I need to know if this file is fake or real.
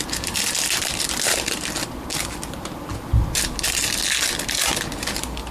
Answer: real